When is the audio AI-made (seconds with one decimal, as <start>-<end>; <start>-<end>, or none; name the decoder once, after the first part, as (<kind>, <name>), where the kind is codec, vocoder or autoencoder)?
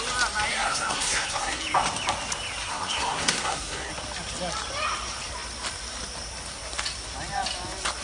0.5-1.6 (codec, SNAC); 2.6-3.9